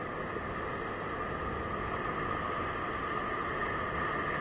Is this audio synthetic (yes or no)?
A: no